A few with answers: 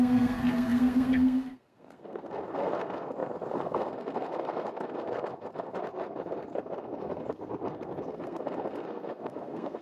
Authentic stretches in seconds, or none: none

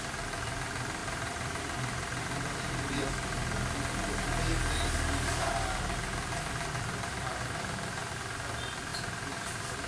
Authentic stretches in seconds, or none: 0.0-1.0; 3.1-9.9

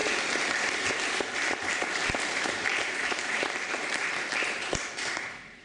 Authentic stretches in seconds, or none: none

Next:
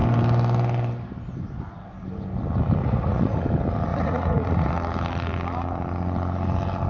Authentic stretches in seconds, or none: 0.0-2.8; 3.4-3.9; 4.7-6.9

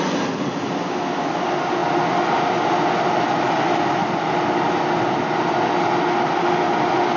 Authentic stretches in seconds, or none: 0.0-7.2

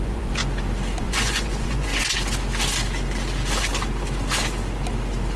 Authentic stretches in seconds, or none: 0.4-1.0; 1.9-5.4

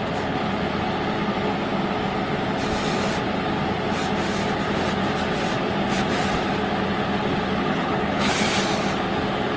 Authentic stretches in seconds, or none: 0.0-7.6; 8.3-9.6

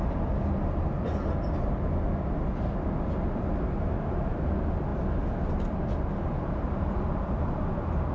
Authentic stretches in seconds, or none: 0.0-8.1